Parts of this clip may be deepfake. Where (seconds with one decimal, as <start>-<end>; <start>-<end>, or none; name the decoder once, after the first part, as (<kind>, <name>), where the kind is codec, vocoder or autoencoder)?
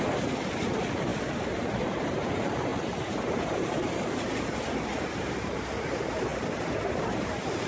2.7-4.3 (vocoder, BigVGAN v2)